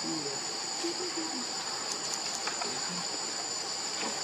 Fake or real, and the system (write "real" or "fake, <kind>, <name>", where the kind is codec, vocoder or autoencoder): real